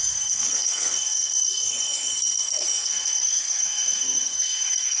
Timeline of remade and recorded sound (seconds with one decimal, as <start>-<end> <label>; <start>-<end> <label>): 0.0-5.0 remade